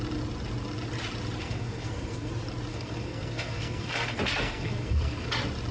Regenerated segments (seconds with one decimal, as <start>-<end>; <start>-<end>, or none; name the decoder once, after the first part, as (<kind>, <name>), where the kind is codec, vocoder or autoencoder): 1.4-2.3 (codec, SNAC); 2.7-5.3